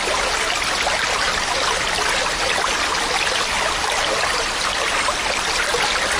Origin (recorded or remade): recorded